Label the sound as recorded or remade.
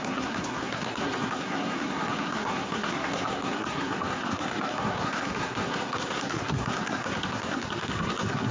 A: remade